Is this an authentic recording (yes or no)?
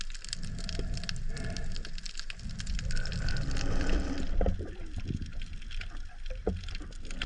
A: yes